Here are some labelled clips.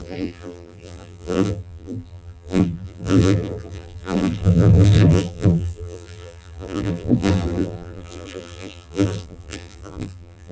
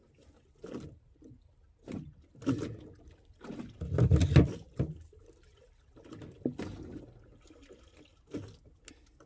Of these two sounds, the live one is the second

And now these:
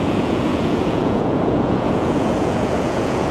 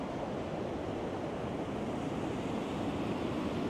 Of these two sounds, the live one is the second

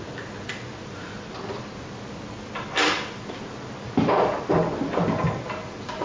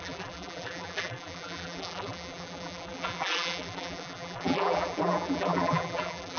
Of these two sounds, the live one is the first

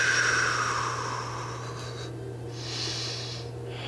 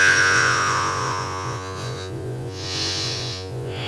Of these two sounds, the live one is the first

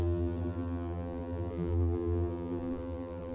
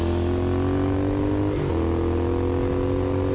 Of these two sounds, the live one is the second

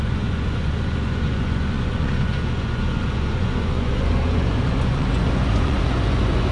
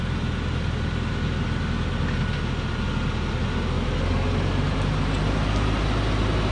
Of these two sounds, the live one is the second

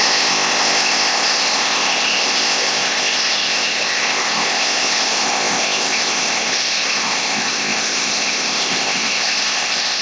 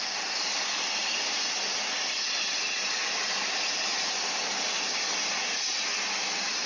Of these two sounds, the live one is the second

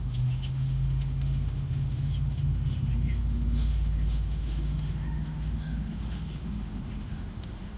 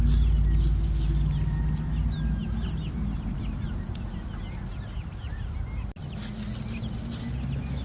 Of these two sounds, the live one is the second